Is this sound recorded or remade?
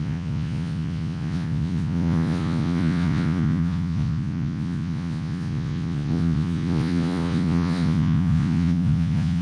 remade